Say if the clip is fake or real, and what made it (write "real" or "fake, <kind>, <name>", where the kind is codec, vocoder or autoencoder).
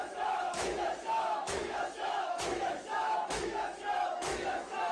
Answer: fake, autoencoder, DAC-VAE